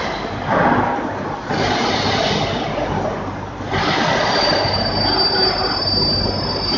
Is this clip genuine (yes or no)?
yes